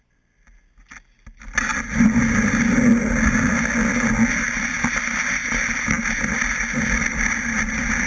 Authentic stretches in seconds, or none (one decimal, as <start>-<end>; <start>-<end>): 0.0-8.1